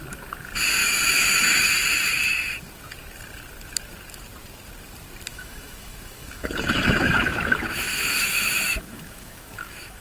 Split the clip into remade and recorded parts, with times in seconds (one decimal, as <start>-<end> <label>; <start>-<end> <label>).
0.0-0.8 recorded; 0.8-1.6 remade; 1.6-5.3 recorded; 5.3-10.0 remade